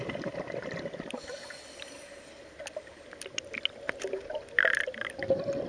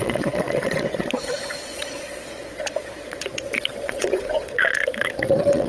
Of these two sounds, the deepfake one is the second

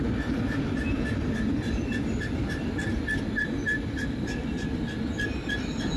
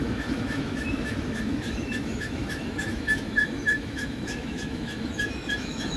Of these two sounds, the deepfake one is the second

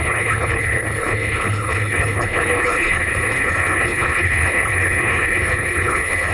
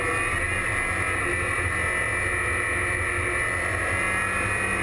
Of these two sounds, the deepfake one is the first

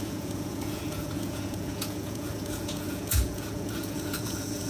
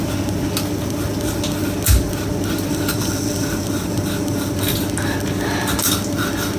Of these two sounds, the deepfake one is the first